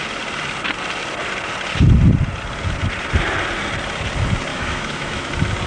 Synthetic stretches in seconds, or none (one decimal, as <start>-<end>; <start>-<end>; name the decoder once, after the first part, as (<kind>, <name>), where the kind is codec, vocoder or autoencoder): 4.5-5.3 (autoencoder, DAC-VAE)